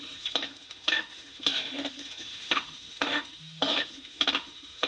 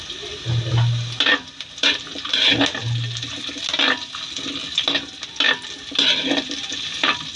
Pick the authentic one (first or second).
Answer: second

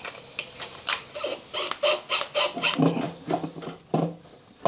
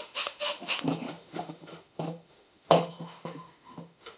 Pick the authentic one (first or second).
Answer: first